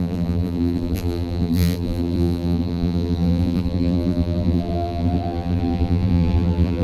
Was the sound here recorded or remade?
remade